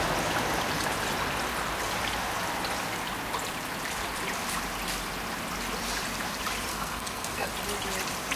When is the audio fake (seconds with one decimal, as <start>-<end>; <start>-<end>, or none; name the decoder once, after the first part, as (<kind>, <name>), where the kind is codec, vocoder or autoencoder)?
6.7-7.5 (codec, SNAC)